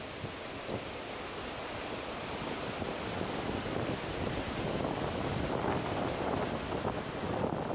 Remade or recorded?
recorded